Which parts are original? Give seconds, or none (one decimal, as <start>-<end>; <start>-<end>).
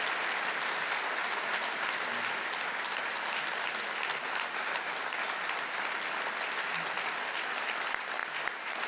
0.0-8.9